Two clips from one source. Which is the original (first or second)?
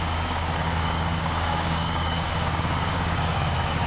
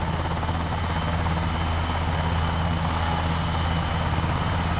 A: second